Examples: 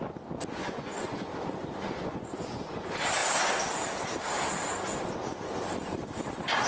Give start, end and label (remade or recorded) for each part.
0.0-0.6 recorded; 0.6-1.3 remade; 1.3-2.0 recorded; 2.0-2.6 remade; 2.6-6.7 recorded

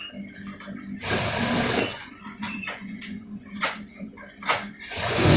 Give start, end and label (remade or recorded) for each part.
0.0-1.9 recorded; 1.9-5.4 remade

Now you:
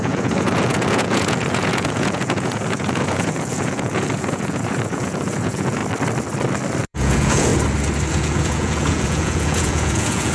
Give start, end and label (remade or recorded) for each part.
0.0-5.8 remade; 5.8-6.8 recorded; 6.8-7.5 remade; 7.5-8.1 recorded; 8.1-10.3 remade

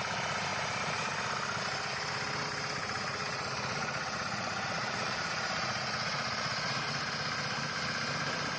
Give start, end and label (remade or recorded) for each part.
0.0-2.8 recorded; 2.8-7.1 remade; 7.1-8.6 recorded

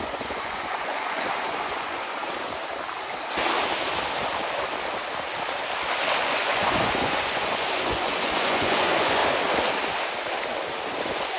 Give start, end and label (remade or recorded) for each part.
0.0-2.2 remade; 2.2-6.2 recorded; 6.2-9.2 remade; 9.2-11.0 recorded; 11.0-11.4 remade